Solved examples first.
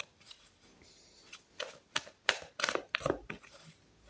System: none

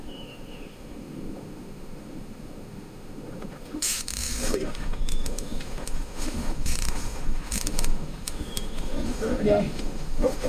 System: autoencoder, DAC-VAE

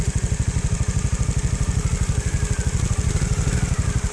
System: none